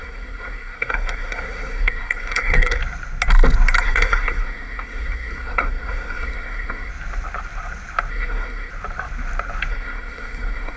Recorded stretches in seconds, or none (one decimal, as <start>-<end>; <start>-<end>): 2.8-3.8; 6.9-8.1; 8.7-9.7